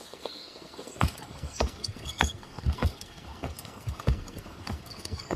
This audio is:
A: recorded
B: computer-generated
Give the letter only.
B